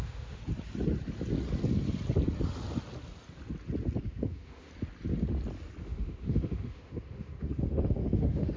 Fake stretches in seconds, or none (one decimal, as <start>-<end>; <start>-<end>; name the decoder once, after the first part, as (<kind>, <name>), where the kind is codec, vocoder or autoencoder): 0.0-0.4 (autoencoder, DAC-VAE); 4.0-4.7; 5.8-8.6